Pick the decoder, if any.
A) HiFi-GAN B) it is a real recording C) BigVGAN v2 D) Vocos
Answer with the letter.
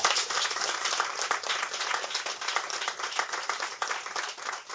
B